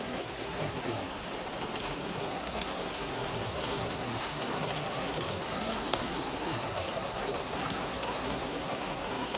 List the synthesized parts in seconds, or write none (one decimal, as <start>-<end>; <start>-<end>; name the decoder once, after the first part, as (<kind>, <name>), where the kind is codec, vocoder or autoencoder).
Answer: 0.0-1.2 (codec, SNAC); 1.8-9.4